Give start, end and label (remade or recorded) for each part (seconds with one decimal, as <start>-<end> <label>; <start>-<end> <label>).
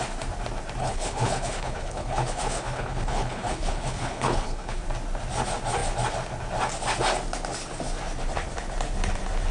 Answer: 0.0-0.8 recorded; 0.8-4.8 remade; 4.8-9.5 recorded